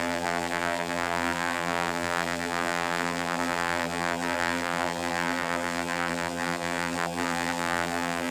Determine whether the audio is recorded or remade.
remade